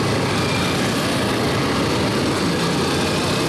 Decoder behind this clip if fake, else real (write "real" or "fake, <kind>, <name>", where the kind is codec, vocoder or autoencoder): real